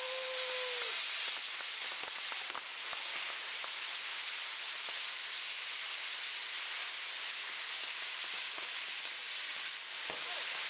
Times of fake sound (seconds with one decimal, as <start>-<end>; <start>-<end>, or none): none